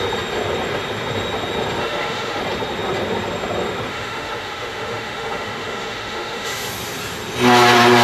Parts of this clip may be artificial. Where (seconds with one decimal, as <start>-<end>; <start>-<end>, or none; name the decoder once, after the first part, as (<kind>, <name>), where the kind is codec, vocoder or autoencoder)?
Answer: 1.8-2.4 (autoencoder, DAC-VAE); 3.9-6.7